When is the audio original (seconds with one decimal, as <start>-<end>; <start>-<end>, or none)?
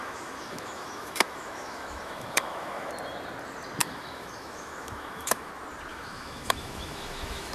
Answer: 2.9-3.8; 5.5-5.9